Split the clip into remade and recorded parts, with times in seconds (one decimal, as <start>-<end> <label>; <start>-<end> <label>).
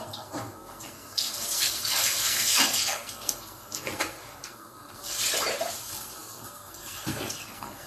0.0-5.2 remade; 5.2-5.8 recorded; 5.8-7.9 remade